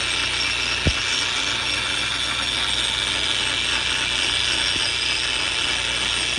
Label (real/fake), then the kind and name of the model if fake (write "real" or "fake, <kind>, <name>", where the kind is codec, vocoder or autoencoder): real